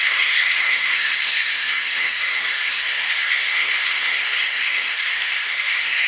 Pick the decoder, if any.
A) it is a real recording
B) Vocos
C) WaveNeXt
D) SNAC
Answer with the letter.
D